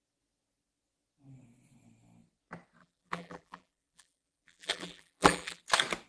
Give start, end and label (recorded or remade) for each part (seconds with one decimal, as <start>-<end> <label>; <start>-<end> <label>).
0.0-2.8 recorded; 2.8-5.6 remade; 5.6-6.1 recorded